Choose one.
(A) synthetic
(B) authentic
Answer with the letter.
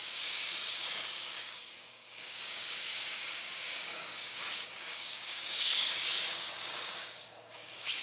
A